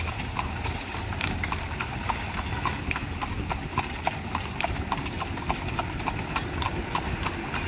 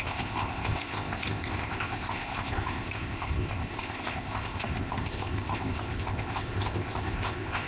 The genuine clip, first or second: first